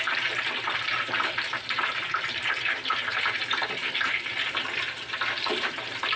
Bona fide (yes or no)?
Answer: no